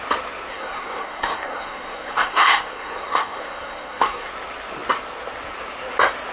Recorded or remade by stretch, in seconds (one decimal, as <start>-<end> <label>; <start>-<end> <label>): 0.0-0.5 recorded; 0.5-4.3 remade; 4.3-6.3 recorded